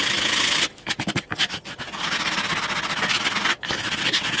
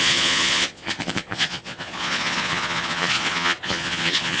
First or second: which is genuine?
first